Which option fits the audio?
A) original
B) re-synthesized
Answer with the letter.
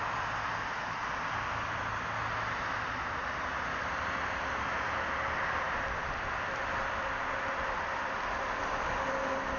A